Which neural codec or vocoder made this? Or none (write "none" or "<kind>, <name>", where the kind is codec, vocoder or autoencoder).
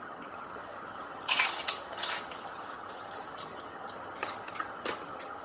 vocoder, HiFi-GAN